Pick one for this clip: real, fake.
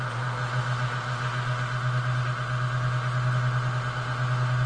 real